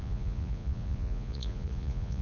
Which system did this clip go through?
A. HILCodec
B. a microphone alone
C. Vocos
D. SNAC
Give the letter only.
C